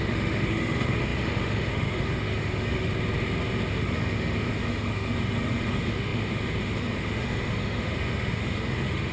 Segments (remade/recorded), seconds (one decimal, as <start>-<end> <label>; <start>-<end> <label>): 0.0-2.9 remade; 2.9-3.7 recorded; 3.7-9.1 remade

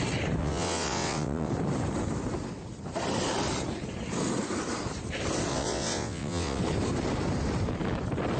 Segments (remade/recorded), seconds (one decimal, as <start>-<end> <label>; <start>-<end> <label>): 0.0-0.4 recorded; 0.4-1.5 remade; 1.5-5.5 recorded; 5.5-6.6 remade; 6.6-8.4 recorded